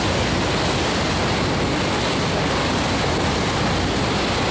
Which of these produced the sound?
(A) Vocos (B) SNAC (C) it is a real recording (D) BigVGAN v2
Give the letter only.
C